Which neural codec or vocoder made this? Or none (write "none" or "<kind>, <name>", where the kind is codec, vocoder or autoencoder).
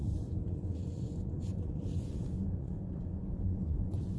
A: vocoder, Vocos